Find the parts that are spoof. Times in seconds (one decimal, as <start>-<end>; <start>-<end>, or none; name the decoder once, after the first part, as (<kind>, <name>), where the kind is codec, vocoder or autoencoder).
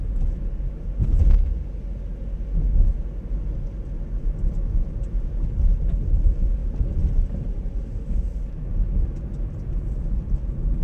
none